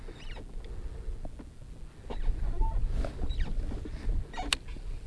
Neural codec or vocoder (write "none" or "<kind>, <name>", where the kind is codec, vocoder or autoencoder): none